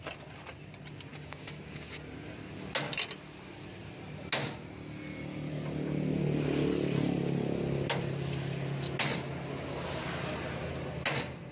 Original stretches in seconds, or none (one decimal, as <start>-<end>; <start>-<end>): 0.0-1.1; 1.9-11.5